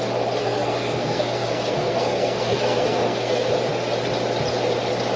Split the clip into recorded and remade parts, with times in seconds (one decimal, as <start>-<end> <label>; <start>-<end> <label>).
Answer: 0.0-0.4 recorded; 0.4-3.5 remade; 3.5-5.2 recorded